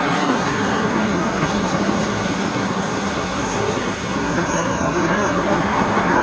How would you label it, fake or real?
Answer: fake